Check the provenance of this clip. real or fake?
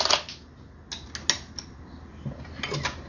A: real